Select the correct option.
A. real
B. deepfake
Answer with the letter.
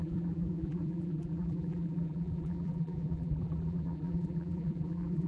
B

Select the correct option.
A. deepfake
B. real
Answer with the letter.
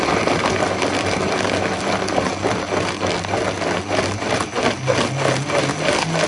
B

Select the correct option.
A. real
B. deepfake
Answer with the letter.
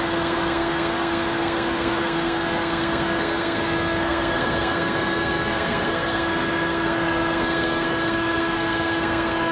B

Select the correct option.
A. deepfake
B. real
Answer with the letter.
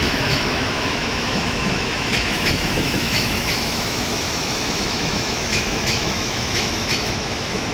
A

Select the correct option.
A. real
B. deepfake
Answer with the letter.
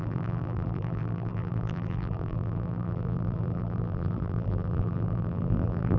B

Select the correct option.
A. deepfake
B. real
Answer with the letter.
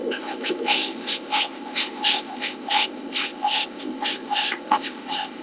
A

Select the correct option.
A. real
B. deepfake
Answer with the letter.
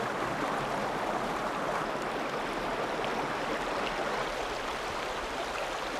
A